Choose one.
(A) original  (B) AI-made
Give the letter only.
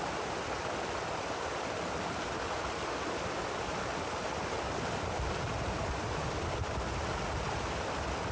A